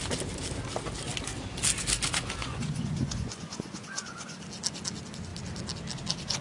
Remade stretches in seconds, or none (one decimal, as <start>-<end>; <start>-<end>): 2.4-4.4